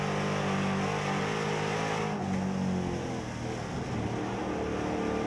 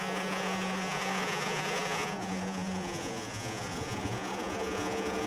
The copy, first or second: second